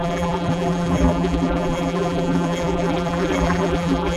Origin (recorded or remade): remade